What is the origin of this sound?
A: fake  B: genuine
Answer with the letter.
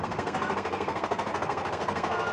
A